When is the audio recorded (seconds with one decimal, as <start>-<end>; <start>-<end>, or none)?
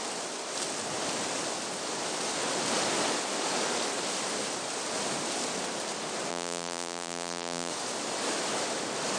0.0-6.3; 7.7-9.2